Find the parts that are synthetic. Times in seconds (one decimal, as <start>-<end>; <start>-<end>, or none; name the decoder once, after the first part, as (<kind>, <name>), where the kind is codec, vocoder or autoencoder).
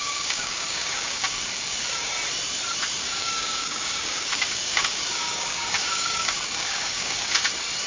0.0-2.1 (codec, DAC); 3.0-7.5